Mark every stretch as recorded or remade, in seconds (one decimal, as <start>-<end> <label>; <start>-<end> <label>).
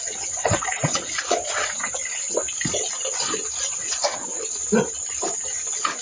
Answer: 0.0-2.0 remade; 2.0-3.6 recorded; 3.6-4.3 remade; 4.3-6.0 recorded